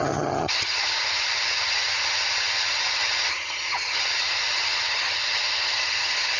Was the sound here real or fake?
fake